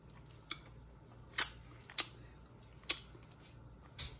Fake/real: real